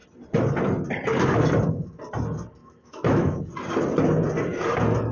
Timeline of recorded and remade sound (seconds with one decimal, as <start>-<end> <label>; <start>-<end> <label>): 0.0-2.6 recorded; 2.6-3.4 remade; 3.4-5.1 recorded